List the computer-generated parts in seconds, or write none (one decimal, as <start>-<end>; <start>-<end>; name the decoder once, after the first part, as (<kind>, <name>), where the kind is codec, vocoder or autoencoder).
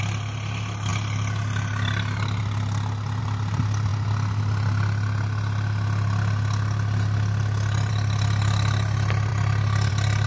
none